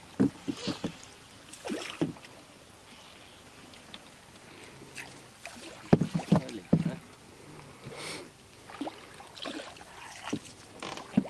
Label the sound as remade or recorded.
recorded